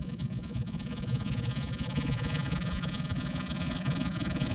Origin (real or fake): fake